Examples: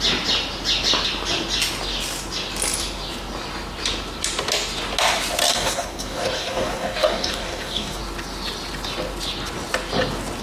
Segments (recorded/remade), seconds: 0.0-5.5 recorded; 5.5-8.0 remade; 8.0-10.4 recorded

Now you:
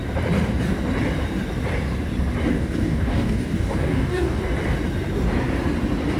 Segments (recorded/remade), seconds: 0.0-2.5 recorded; 2.5-4.4 remade; 4.4-6.2 recorded